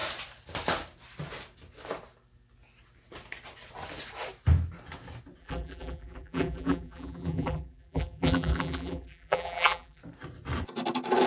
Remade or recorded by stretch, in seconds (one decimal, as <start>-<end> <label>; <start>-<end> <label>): 0.0-5.4 recorded; 5.4-10.0 remade; 10.0-11.3 recorded